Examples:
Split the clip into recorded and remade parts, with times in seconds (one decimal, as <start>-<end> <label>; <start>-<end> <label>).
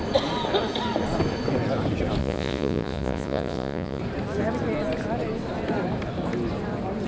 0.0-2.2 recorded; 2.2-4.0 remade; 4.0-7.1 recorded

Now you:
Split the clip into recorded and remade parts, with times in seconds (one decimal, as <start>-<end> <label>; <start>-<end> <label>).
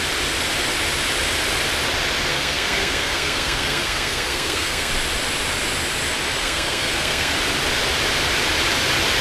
0.0-2.3 recorded; 2.3-4.9 remade; 4.9-6.4 recorded; 6.4-7.3 remade; 7.3-9.2 recorded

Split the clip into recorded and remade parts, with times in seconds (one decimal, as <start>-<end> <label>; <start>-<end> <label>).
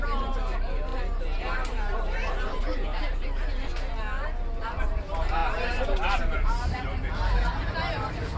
0.0-3.5 remade; 3.5-4.6 recorded; 4.6-8.4 remade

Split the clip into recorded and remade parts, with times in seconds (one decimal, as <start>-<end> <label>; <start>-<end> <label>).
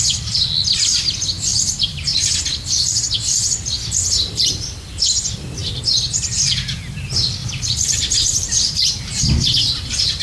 0.0-1.5 recorded; 1.5-2.3 remade; 2.3-7.4 recorded; 7.4-9.2 remade; 9.2-10.2 recorded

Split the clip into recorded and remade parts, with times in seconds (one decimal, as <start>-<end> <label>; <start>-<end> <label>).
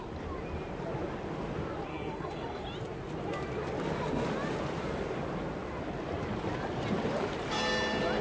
0.0-1.9 recorded; 1.9-2.6 remade; 2.6-8.2 recorded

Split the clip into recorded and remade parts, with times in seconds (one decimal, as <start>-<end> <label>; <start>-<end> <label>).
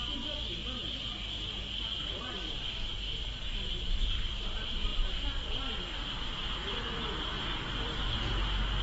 0.0-8.8 recorded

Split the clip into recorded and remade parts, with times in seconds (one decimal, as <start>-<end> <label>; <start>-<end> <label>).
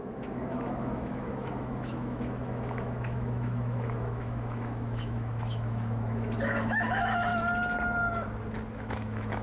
0.0-7.3 remade; 7.3-8.7 recorded; 8.7-9.4 remade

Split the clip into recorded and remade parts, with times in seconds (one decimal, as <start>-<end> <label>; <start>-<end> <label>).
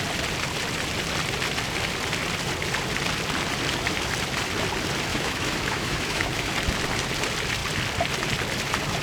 0.0-5.1 recorded; 5.1-6.5 remade; 6.5-9.0 recorded